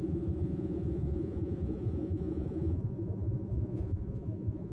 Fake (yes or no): yes